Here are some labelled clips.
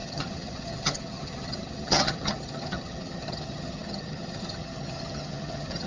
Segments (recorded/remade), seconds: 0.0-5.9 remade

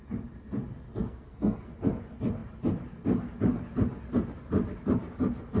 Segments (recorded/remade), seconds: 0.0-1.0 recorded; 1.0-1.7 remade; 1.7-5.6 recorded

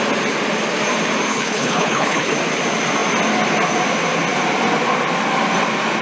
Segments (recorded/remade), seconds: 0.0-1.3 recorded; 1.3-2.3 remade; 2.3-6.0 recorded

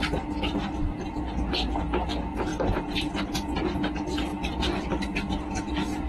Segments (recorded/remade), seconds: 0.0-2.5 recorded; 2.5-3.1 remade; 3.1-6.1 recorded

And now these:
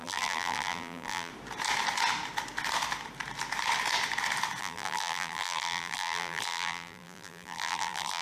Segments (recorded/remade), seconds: 0.0-1.3 remade; 1.3-4.6 recorded; 4.6-8.2 remade

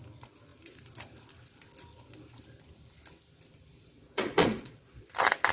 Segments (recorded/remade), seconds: 0.0-3.7 recorded; 3.7-5.1 remade; 5.1-5.5 recorded

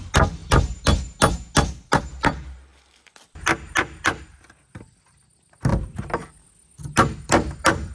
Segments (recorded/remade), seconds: 0.0-7.9 recorded

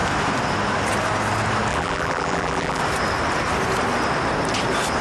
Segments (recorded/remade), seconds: 0.0-1.7 recorded; 1.7-2.8 remade; 2.8-5.0 recorded